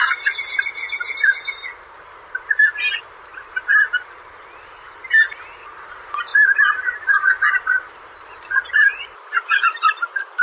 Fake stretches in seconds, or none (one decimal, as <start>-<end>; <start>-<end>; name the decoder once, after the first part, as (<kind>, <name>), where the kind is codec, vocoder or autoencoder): 6.3-8.7 (vocoder, BigVGAN v2)